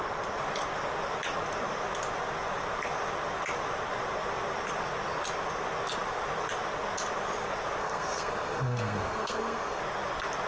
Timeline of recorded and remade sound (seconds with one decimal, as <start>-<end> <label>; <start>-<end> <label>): 0.0-7.8 recorded; 7.8-9.8 remade; 9.8-10.5 recorded